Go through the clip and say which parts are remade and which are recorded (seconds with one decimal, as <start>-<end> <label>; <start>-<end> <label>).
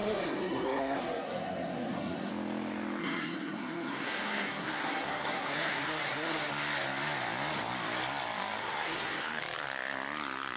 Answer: 0.0-2.3 remade; 2.3-3.0 recorded; 3.0-6.5 remade; 6.5-8.6 recorded; 8.6-9.4 remade; 9.4-10.6 recorded